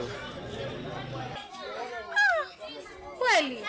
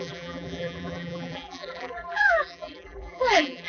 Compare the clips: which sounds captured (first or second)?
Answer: first